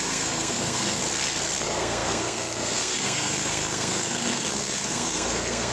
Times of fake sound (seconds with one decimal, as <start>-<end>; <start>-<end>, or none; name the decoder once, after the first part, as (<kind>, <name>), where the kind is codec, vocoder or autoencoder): 0.0-1.0 (codec, SNAC); 1.6-5.7